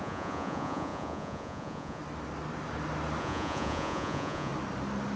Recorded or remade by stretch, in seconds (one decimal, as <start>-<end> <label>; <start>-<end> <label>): 0.0-2.0 remade; 2.0-3.2 recorded; 3.2-4.5 remade; 4.5-5.2 recorded

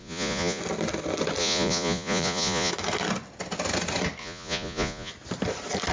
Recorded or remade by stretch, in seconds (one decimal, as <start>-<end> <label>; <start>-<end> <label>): 0.0-0.6 remade; 0.6-1.4 recorded; 1.4-2.7 remade; 2.7-4.2 recorded; 4.2-5.1 remade; 5.1-5.9 recorded

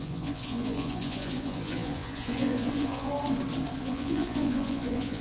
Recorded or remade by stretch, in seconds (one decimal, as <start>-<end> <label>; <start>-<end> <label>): 0.0-3.1 remade; 3.1-3.8 recorded; 3.8-5.2 remade

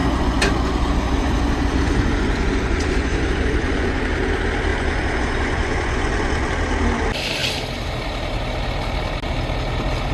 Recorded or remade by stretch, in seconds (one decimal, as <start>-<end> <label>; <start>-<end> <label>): 0.0-4.0 remade; 4.0-4.7 recorded; 4.7-6.5 remade; 6.5-10.1 recorded

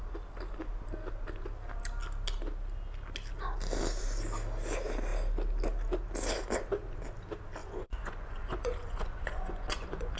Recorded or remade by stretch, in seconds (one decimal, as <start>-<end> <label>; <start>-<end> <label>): 0.0-7.6 recorded; 7.6-10.2 remade

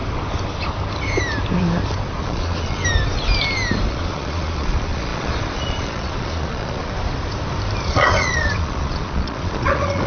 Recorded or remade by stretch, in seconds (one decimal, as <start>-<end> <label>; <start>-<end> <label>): 0.0-2.2 recorded; 2.2-2.8 remade; 2.8-3.9 recorded; 3.9-6.9 remade; 6.9-7.8 recorded; 7.8-10.1 remade